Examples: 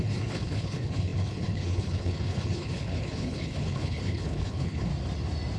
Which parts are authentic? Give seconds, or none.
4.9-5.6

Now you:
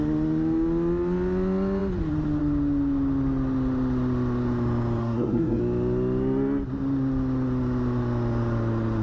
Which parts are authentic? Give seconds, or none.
0.0-5.0; 5.6-9.0

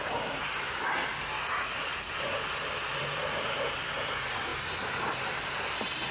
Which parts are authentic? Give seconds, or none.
0.0-6.1